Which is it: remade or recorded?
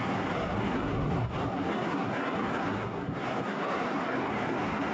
remade